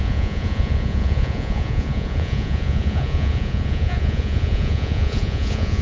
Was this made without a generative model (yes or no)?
no